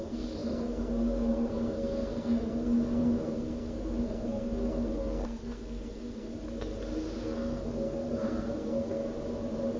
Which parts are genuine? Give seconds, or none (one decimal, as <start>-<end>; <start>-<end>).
6.3-7.2; 9.0-9.8